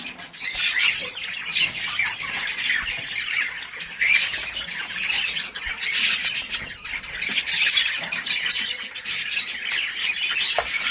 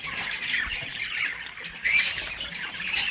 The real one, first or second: first